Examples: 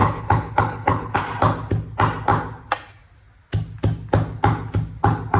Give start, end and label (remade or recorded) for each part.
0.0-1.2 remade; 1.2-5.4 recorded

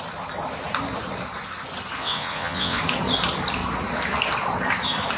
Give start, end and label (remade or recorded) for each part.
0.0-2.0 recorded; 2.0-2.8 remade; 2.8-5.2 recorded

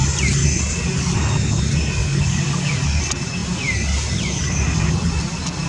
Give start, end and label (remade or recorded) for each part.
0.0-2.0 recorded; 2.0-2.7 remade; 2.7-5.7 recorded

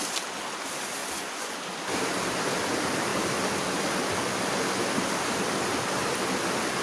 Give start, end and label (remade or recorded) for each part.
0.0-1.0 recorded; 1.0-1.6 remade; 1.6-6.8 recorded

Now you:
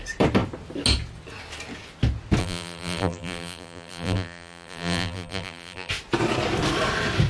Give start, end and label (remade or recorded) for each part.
0.0-2.4 recorded; 2.4-5.9 remade; 5.9-7.3 recorded